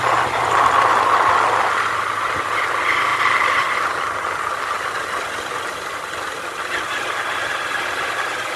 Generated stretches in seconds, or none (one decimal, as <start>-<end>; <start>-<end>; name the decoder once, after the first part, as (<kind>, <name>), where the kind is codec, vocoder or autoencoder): none